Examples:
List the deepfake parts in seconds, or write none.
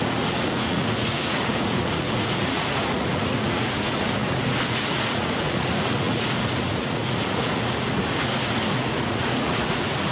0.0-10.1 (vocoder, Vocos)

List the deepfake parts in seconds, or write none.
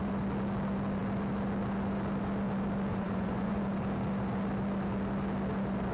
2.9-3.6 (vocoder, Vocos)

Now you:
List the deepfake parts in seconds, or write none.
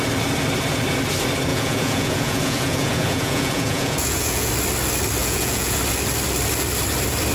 1.5-4.5 (vocoder, Vocos); 5.2-5.8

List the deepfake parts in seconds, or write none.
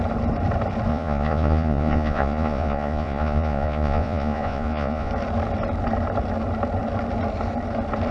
0.9-5.1 (vocoder, Vocos)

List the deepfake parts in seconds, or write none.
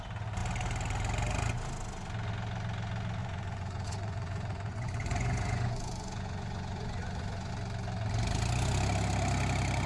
3.2-7.5 (vocoder, Vocos)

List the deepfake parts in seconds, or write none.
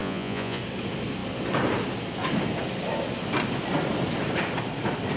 0.0-0.6 (vocoder, Vocos)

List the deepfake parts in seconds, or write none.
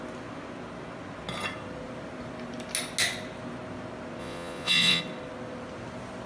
4.2-5.0 (vocoder, Vocos)